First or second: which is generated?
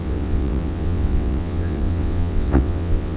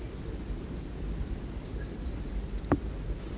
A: first